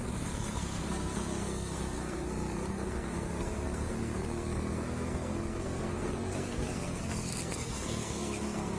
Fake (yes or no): yes